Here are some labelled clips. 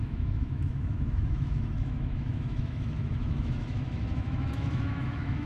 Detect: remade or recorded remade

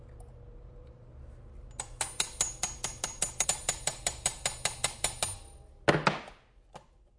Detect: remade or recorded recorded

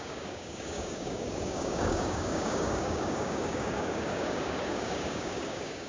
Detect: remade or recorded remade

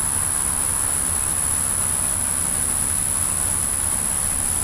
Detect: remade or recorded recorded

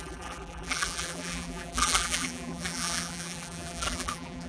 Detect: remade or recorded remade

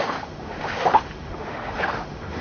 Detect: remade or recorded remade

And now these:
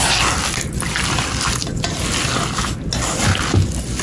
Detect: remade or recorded recorded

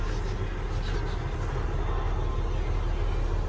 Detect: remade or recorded recorded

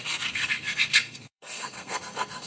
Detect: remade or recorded remade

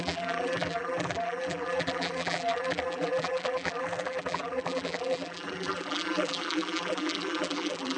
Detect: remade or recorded remade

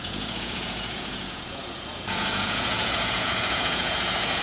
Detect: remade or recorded remade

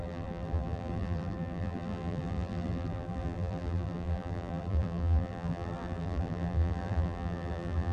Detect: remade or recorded remade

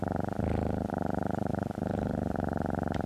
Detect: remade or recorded recorded